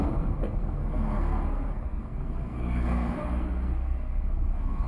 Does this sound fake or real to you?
fake